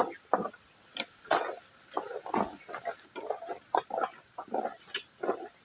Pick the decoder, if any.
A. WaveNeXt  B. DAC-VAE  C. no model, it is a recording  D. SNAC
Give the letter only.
C